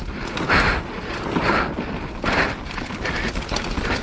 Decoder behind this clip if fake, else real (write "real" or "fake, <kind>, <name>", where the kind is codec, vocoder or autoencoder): real